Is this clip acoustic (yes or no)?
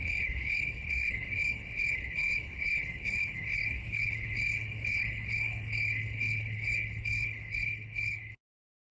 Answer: no